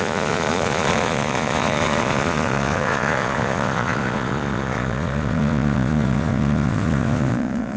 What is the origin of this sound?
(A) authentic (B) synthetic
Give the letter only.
B